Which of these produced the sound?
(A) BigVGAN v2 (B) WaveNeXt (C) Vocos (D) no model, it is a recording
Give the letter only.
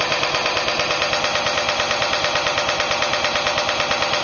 D